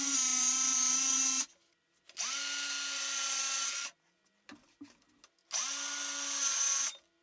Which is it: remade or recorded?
recorded